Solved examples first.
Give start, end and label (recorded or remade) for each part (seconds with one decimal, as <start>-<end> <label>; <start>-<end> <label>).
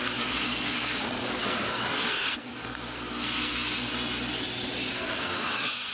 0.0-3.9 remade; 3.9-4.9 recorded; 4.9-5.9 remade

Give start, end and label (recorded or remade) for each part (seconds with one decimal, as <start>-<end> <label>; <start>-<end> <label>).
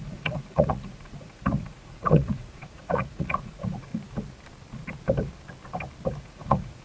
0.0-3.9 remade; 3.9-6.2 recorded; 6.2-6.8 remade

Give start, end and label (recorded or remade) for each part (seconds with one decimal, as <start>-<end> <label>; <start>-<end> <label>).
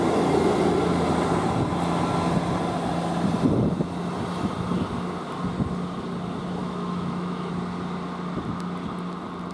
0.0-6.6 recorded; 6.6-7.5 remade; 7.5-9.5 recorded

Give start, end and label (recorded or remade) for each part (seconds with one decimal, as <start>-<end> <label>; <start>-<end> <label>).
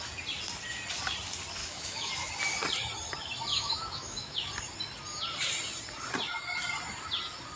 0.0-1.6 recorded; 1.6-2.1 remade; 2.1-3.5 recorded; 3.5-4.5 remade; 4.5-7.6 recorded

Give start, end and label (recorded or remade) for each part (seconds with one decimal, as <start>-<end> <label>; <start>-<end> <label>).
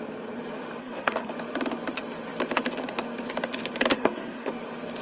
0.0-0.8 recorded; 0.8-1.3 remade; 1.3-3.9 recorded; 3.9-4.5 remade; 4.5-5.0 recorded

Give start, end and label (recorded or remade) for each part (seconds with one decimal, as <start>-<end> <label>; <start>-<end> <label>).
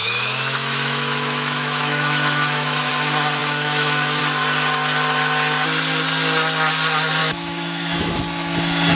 0.0-2.9 remade; 2.9-3.4 recorded; 3.4-4.2 remade; 4.2-7.2 recorded; 7.2-8.2 remade; 8.2-9.0 recorded